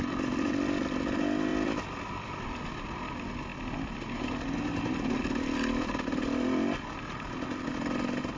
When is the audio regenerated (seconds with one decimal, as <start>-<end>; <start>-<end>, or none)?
none